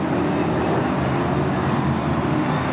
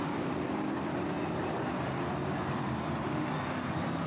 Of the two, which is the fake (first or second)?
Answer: second